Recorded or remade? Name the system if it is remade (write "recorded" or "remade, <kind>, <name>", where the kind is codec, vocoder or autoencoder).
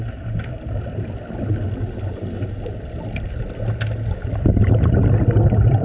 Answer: recorded